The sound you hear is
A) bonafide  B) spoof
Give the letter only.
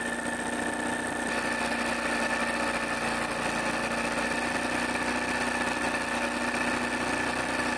A